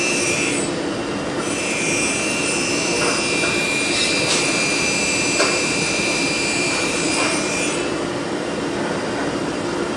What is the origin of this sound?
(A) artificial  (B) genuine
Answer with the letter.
A